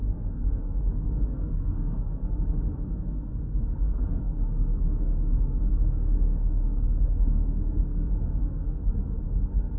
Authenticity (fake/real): fake